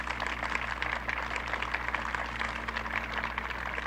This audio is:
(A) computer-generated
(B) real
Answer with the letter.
B